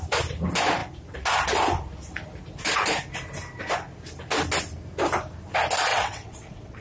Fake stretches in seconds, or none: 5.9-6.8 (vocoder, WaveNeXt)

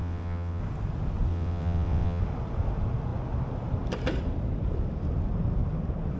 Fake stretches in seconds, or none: 0.0-0.6 (vocoder, WaveNeXt); 1.3-2.2